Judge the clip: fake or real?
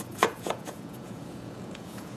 fake